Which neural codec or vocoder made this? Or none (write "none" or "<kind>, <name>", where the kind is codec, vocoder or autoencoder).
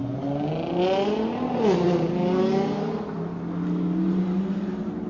none